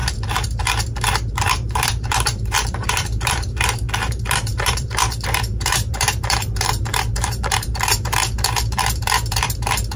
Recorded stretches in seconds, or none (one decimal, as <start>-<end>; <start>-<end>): none